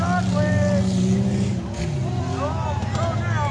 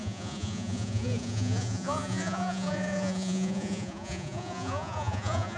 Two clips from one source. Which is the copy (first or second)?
second